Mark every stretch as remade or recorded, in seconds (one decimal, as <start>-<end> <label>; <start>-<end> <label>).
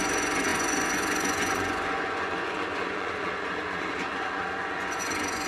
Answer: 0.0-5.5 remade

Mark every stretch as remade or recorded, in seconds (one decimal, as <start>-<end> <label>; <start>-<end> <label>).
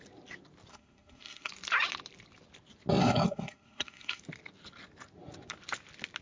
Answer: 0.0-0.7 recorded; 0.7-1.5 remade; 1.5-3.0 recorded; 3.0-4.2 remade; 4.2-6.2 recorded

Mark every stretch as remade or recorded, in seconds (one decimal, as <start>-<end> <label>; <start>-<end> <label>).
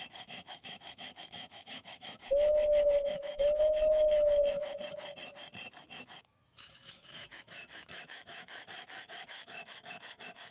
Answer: 0.0-4.8 remade; 4.8-5.8 recorded; 5.8-10.5 remade